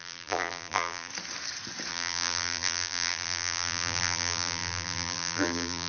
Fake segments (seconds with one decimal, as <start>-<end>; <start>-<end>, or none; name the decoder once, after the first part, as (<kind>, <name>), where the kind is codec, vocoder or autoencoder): 0.0-1.1 (vocoder, BigVGAN v2); 1.9-5.9